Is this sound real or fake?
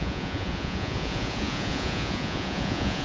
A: fake